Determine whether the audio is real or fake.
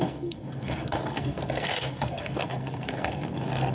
fake